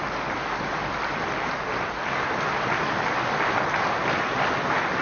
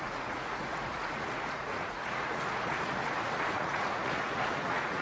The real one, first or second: first